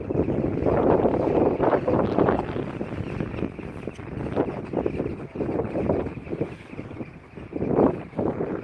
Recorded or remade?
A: recorded